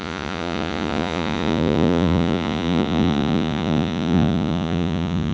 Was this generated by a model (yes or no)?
yes